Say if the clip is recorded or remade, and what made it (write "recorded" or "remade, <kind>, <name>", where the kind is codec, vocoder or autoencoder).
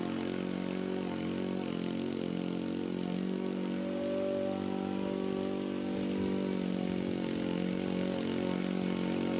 recorded